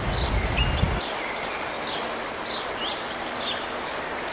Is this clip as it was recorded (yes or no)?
yes